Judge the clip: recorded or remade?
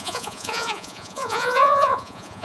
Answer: remade